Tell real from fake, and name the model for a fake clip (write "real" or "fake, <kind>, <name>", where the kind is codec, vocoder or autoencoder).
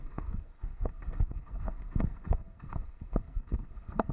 fake, codec, SNAC